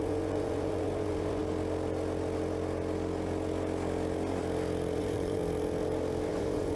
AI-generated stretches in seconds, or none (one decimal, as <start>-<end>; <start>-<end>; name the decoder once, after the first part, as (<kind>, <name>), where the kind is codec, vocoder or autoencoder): 0.0-1.4 (vocoder, Vocos); 5.0-5.4; 6.3-6.8